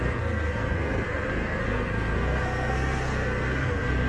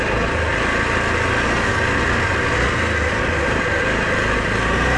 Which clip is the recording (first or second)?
second